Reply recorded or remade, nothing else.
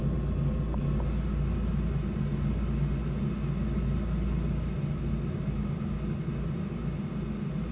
recorded